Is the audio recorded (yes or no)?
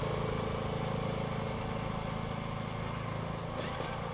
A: yes